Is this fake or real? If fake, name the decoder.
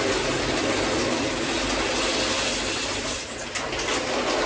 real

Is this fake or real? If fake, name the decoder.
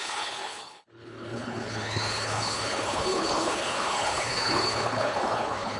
fake, codec, HILCodec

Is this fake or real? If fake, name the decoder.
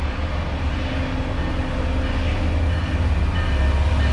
real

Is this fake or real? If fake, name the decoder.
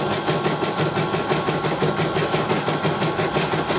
real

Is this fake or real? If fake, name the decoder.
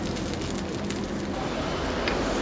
real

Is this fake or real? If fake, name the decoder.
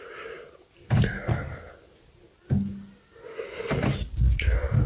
real